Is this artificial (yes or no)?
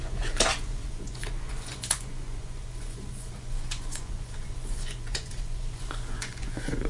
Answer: yes